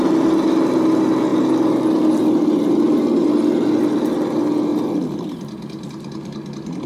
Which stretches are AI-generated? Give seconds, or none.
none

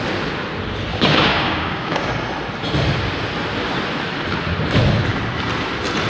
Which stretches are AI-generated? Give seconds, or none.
0.9-2.1 (codec, DAC)

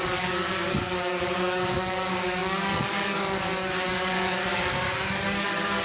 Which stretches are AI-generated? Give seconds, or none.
0.0-5.8 (codec, DAC)

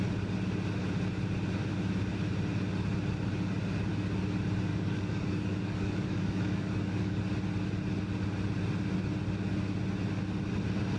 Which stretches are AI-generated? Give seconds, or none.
4.7-7.2 (codec, DAC)

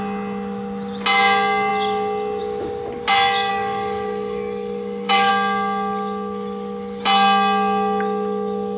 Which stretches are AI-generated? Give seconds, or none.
3.5-5.3 (codec, DAC)